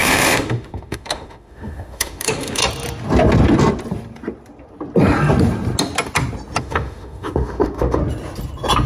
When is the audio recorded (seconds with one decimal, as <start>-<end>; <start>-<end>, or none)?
2.6-6.6; 8.0-8.9

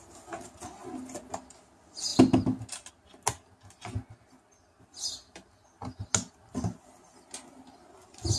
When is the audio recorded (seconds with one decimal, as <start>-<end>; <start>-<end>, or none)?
0.0-8.4

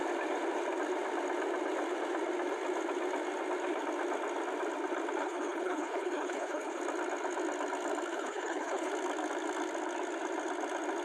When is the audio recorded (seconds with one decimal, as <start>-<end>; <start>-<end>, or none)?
0.0-5.2; 6.8-8.1; 8.9-11.0

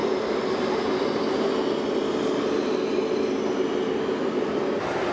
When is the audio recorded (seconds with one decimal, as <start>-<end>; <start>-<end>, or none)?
0.0-5.1

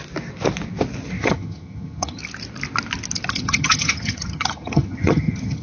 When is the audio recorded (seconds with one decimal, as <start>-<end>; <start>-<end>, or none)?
0.0-1.2; 2.2-3.3

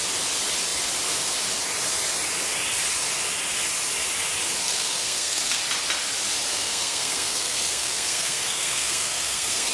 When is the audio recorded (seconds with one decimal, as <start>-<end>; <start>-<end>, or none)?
0.0-4.6; 5.6-6.5

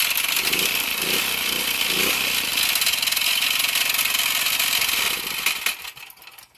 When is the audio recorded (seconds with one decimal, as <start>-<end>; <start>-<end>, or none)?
0.0-6.6

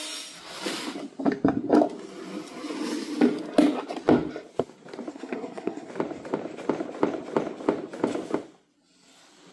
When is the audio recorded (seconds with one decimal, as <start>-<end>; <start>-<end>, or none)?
0.0-5.1; 5.9-9.5